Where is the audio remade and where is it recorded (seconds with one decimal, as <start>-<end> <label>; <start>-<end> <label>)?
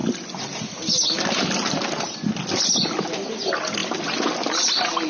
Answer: 0.0-5.1 recorded